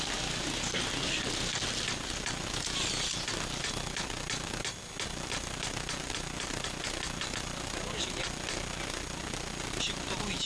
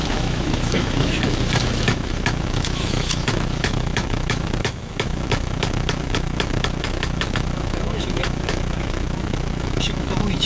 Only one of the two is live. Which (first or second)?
first